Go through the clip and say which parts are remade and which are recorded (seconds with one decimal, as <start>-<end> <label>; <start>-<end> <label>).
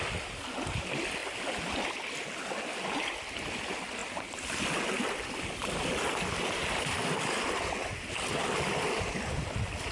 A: 0.0-1.2 recorded; 1.2-2.1 remade; 2.1-9.9 recorded